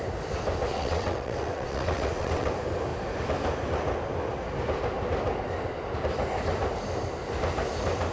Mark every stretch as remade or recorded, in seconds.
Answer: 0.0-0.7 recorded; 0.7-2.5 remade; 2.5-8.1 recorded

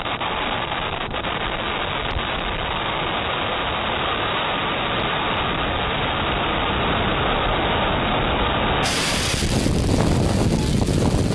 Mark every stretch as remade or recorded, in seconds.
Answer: 0.0-11.3 recorded

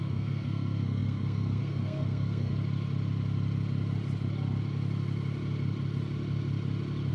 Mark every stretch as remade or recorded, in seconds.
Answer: 0.0-2.5 remade; 2.5-7.1 recorded